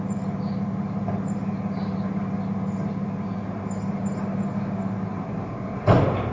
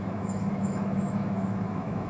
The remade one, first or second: second